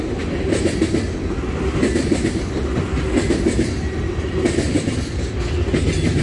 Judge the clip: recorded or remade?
recorded